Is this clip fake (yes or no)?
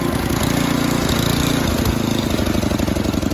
no